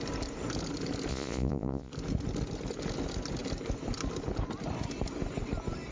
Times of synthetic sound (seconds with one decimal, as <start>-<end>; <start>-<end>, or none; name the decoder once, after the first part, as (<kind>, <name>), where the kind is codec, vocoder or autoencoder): 1.1-1.9 (vocoder, Vocos)